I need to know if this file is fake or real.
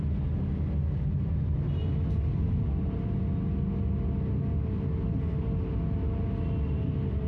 real